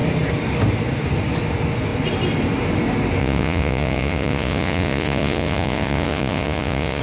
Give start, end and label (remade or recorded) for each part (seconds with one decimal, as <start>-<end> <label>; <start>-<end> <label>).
0.0-3.2 recorded; 3.2-7.0 remade

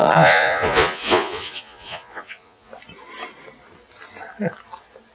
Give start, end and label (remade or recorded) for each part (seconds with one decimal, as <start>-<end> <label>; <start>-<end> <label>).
0.0-2.7 remade; 2.7-5.1 recorded

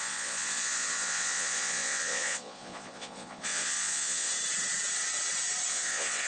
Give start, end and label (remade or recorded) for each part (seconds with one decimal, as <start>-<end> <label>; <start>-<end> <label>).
0.0-4.3 remade; 4.3-5.7 recorded; 5.7-6.3 remade